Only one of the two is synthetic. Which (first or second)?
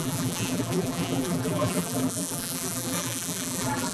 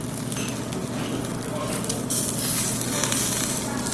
first